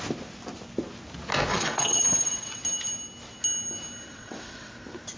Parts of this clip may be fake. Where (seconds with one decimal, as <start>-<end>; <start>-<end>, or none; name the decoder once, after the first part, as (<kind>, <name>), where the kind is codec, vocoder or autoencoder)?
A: 1.5-2.6 (vocoder, WaveNeXt); 4.1-4.7